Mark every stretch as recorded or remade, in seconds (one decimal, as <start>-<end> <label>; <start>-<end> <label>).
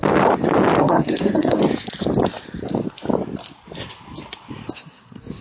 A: 0.0-0.8 recorded; 0.8-1.6 remade; 1.6-4.7 recorded; 4.7-5.4 remade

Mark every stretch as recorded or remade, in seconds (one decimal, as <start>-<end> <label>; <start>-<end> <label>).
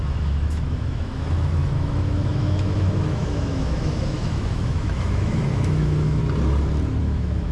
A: 0.0-6.2 remade; 6.2-7.0 recorded; 7.0-7.5 remade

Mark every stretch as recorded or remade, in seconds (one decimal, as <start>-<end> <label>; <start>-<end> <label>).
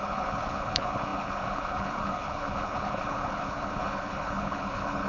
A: 0.0-5.1 remade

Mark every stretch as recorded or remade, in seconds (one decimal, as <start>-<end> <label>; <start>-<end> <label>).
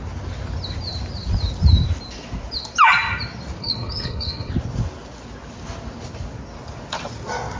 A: 0.0-3.6 recorded; 3.6-4.5 remade; 4.5-7.6 recorded